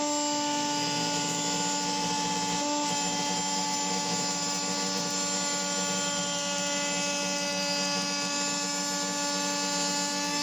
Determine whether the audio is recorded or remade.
recorded